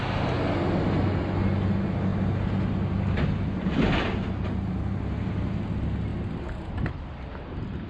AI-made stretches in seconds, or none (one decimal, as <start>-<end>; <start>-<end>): none